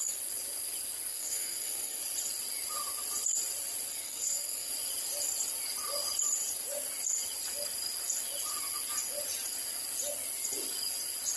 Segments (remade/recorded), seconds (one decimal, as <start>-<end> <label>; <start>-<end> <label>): 0.0-1.1 recorded; 1.1-2.0 remade; 2.0-3.9 recorded; 3.9-4.7 remade; 4.7-11.4 recorded